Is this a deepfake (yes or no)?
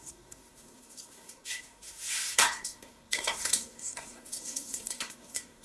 yes